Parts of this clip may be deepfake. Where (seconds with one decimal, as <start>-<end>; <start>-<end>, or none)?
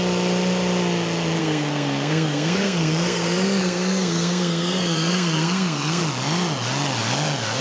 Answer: 1.4-6.0